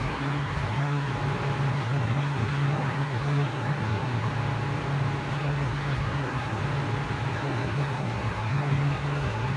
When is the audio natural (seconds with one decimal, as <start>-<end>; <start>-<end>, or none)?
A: 1.1-1.7; 4.3-5.3; 6.6-7.3